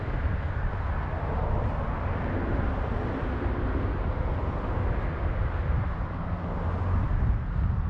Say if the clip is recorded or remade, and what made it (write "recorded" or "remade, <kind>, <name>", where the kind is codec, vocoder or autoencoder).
recorded